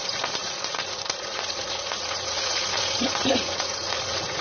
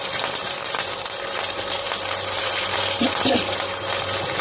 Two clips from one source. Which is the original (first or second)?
second